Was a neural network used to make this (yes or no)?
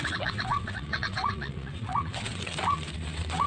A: yes